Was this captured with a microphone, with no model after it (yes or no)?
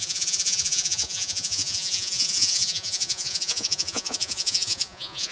no